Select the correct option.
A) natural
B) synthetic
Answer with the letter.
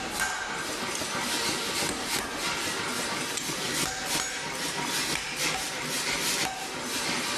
A